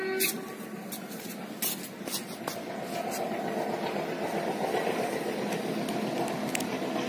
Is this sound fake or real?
real